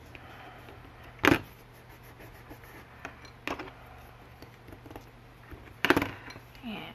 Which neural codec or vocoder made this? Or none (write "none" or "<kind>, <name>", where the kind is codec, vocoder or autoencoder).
none